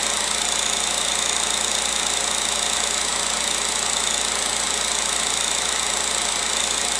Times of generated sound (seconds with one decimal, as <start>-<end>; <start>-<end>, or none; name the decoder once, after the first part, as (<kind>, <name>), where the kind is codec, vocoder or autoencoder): none